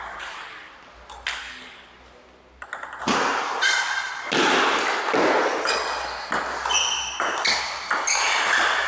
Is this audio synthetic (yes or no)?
no